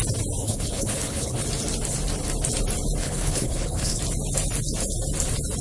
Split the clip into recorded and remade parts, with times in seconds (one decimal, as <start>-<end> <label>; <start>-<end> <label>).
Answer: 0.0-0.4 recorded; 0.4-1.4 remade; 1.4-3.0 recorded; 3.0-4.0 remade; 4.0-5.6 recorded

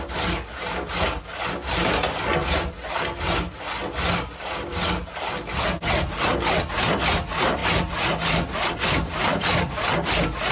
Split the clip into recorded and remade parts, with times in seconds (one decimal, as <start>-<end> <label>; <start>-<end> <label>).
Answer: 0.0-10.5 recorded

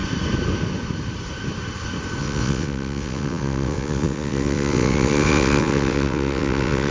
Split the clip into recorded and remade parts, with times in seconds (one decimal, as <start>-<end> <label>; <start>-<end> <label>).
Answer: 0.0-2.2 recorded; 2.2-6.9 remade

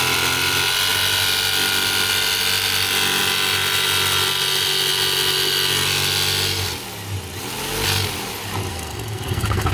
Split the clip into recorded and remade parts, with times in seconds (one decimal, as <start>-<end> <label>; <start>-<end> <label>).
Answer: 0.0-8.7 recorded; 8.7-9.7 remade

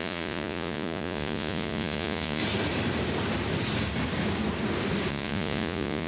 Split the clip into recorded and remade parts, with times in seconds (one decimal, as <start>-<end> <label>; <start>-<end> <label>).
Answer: 0.0-2.4 remade; 2.4-5.1 recorded; 5.1-6.1 remade